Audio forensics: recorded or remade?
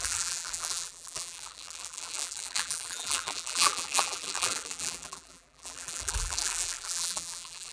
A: remade